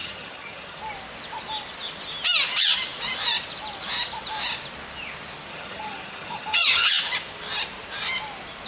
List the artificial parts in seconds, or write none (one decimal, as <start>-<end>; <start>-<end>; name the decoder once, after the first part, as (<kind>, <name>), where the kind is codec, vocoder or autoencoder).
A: 0.0-0.8 (vocoder, HiFi-GAN); 5.5-6.9